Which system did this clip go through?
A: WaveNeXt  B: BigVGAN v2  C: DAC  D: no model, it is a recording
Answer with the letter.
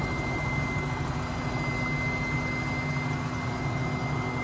D